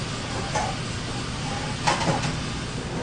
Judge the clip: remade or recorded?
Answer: recorded